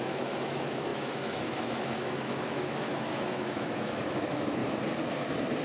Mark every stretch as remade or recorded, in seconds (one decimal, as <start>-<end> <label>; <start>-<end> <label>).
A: 0.0-4.6 remade; 4.6-5.6 recorded